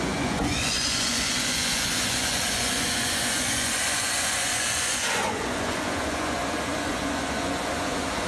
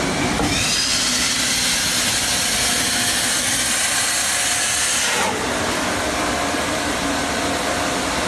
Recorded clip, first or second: second